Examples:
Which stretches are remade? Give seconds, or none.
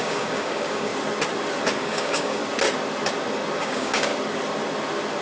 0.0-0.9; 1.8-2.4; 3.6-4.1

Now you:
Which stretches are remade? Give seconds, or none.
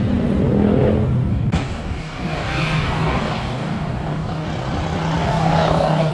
1.3-4.5; 5.2-6.1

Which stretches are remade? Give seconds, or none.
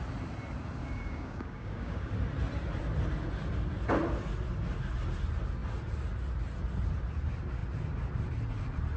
0.8-2.1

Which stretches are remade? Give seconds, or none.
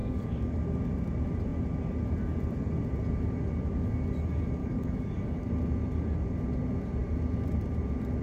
0.0-0.6; 4.6-5.5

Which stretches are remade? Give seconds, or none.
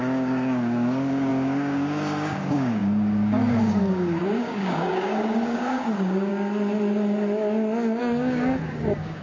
0.0-6.3; 8.0-9.2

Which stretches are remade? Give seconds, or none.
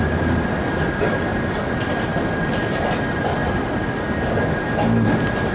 none